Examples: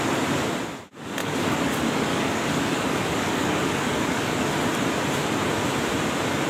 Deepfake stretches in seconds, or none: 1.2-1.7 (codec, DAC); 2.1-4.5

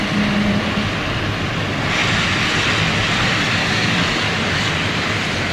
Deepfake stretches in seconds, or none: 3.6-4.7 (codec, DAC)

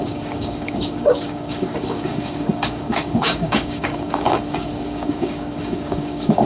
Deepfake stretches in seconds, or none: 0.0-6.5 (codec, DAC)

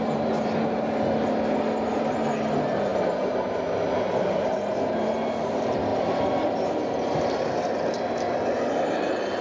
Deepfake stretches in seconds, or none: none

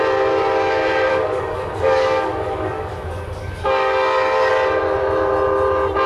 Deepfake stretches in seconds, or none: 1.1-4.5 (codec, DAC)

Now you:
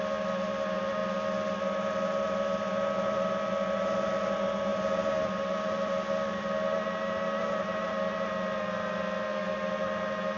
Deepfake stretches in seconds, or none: none